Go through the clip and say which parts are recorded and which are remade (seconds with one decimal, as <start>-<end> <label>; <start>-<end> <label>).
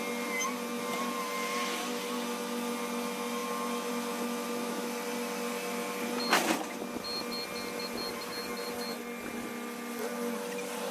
0.0-10.9 recorded